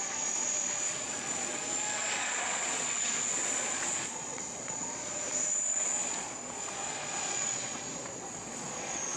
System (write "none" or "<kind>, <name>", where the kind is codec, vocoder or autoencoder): vocoder, Vocos